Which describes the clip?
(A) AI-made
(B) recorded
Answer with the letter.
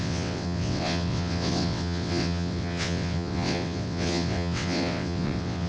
A